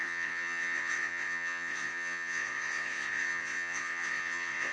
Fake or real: fake